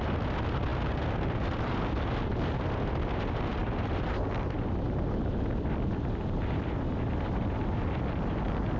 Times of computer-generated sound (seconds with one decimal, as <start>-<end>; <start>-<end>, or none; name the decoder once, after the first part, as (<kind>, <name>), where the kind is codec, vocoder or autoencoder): 3.6-6.9 (vocoder, BigVGAN v2)